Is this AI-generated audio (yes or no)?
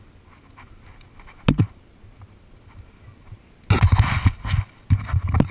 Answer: no